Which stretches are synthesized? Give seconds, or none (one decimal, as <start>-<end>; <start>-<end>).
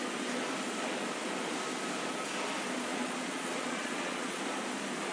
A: 2.9-4.4